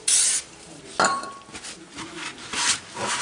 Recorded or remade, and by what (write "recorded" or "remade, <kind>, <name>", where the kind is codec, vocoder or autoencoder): recorded